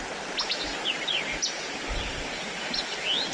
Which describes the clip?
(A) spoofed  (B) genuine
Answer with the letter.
B